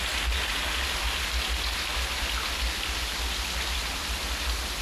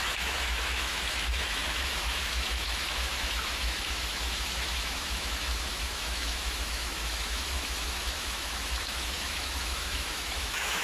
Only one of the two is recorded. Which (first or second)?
first